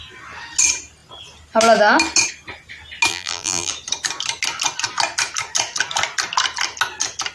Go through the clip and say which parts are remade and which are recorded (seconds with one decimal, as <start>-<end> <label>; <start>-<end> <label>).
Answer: 0.0-3.1 recorded; 3.1-3.7 remade; 3.7-7.3 recorded